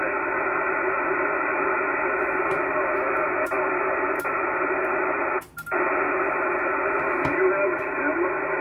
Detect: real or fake real